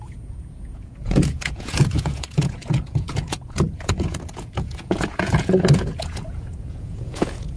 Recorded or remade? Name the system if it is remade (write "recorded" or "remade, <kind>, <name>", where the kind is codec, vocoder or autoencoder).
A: remade, vocoder, Vocos